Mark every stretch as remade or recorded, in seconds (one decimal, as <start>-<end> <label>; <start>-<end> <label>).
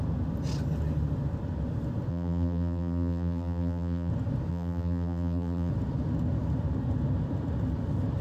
0.0-2.1 recorded; 2.1-4.1 remade; 4.1-4.5 recorded; 4.5-5.7 remade; 5.7-8.2 recorded